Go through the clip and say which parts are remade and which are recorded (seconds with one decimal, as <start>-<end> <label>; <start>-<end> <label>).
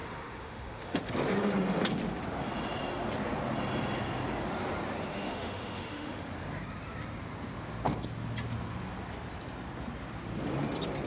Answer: 0.0-1.1 remade; 1.1-5.1 recorded; 5.1-6.2 remade; 6.2-11.1 recorded